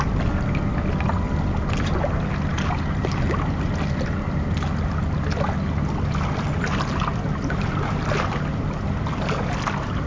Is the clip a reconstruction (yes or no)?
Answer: no